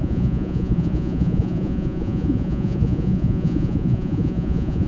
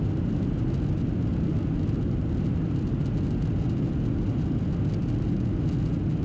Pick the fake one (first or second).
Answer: first